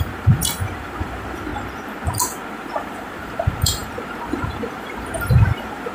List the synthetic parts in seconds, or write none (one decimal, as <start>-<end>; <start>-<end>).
0.0-1.5; 2.5-5.9